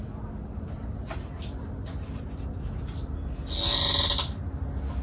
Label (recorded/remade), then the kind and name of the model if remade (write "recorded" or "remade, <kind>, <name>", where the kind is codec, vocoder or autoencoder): recorded